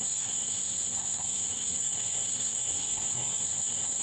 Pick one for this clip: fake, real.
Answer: fake